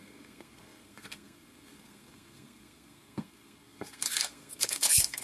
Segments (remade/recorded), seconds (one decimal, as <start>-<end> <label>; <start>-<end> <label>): 0.0-5.2 remade

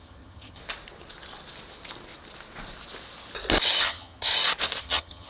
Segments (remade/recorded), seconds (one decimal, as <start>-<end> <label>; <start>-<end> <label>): 0.0-0.6 remade; 0.6-3.8 recorded; 3.8-4.3 remade; 4.3-4.8 recorded; 4.8-5.3 remade

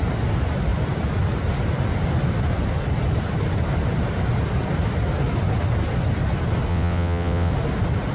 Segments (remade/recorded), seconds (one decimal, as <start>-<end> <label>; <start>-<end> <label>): 0.0-6.7 recorded; 6.7-7.5 remade; 7.5-8.1 recorded

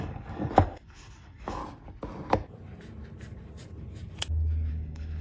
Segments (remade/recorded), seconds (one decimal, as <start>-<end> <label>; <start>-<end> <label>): 0.0-1.6 remade; 1.6-4.7 recorded; 4.7-5.2 remade

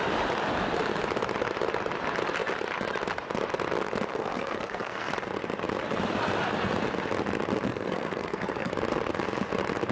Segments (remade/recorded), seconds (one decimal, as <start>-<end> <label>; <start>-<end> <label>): 0.0-4.1 recorded; 4.1-5.1 remade; 5.1-7.7 recorded; 7.7-8.7 remade; 8.7-9.9 recorded

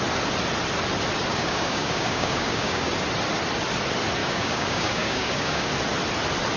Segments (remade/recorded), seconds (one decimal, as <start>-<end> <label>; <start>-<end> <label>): 0.0-1.3 recorded; 1.3-2.9 remade; 2.9-4.2 recorded; 4.2-5.7 remade; 5.7-6.6 recorded

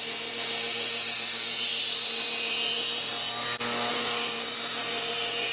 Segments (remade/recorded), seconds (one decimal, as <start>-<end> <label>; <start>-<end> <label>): 0.0-3.1 remade; 3.1-3.9 recorded; 3.9-5.5 remade

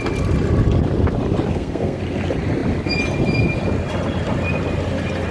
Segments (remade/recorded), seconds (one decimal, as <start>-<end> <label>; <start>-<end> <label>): 0.0-1.5 recorded; 1.5-2.0 remade; 2.0-5.3 recorded